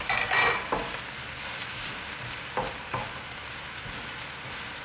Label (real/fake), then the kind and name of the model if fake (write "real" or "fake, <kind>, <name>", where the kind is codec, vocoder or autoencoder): real